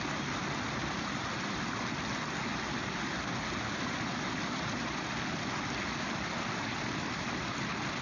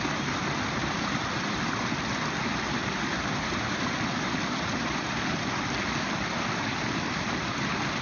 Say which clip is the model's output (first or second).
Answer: second